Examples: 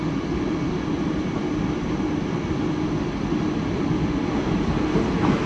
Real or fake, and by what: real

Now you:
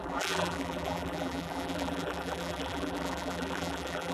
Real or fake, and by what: fake, vocoder, BigVGAN v2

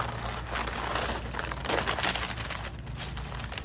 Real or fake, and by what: real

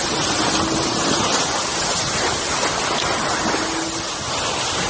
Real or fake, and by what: real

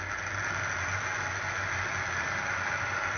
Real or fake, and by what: real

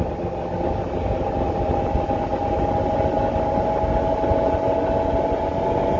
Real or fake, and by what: real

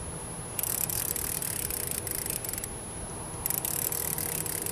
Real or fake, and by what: real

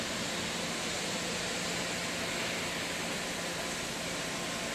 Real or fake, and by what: real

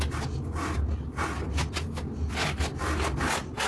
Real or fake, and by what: real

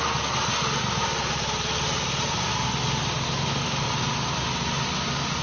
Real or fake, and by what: real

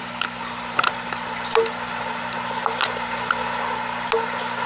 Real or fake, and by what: real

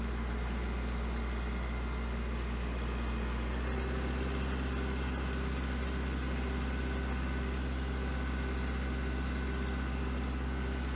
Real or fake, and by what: real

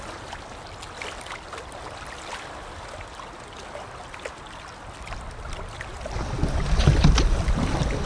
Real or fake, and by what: real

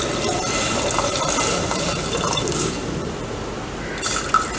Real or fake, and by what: fake, vocoder, BigVGAN v2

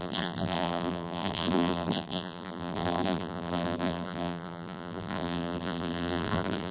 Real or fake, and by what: fake, vocoder, BigVGAN v2